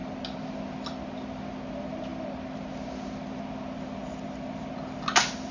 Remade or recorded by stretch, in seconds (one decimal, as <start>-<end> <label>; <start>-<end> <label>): 0.0-5.5 recorded